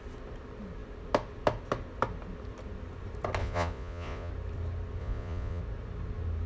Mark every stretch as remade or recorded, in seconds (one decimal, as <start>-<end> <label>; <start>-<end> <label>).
0.0-3.4 recorded; 3.4-4.3 remade; 4.3-5.0 recorded; 5.0-5.6 remade; 5.6-6.5 recorded